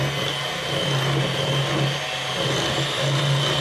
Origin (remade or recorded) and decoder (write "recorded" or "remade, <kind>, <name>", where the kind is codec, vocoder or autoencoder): recorded